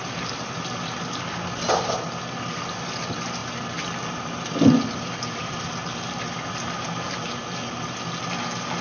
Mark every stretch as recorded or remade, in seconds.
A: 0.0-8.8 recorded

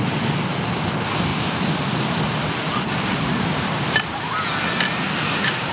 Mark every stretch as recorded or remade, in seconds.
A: 0.0-1.3 recorded; 1.3-4.2 remade; 4.2-5.7 recorded

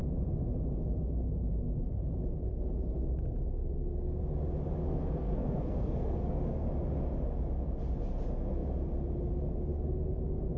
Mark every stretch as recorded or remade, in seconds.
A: 0.0-4.8 recorded; 4.8-6.7 remade; 6.7-10.6 recorded

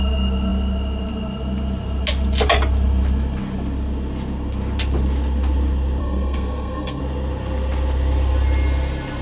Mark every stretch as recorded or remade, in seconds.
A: 0.0-6.0 recorded; 6.0-7.0 remade; 7.0-9.2 recorded

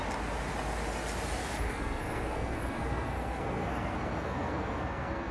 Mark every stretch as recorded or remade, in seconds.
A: 0.0-1.7 recorded; 1.7-5.3 remade

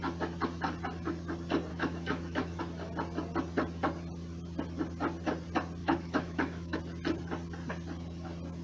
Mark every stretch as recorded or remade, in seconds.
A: 0.0-1.7 recorded; 1.7-2.6 remade; 2.6-5.8 recorded; 5.8-6.8 remade; 6.8-8.6 recorded

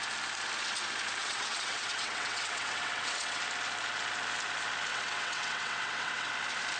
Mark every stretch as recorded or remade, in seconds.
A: 0.0-1.2 recorded; 1.2-3.4 remade; 3.4-4.9 recorded; 4.9-6.3 remade; 6.3-6.8 recorded